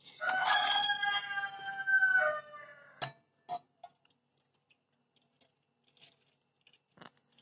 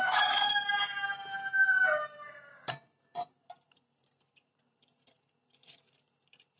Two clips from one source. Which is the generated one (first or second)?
second